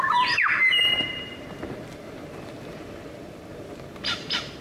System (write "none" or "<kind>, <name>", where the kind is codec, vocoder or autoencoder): vocoder, BigVGAN v2